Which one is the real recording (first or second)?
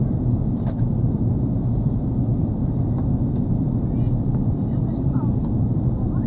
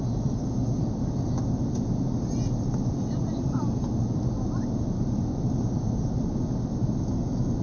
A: second